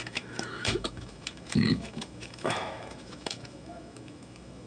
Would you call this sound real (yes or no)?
no